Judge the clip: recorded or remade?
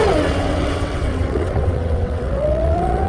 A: remade